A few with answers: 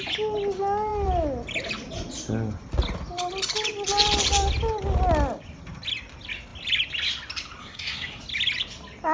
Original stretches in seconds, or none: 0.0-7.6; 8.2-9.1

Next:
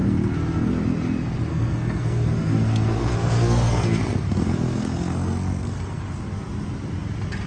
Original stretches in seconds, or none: 0.7-1.5; 6.0-7.5

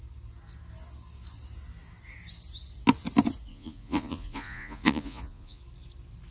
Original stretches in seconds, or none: 0.0-3.5; 5.6-6.3

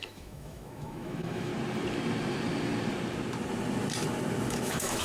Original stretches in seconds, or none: 1.5-4.5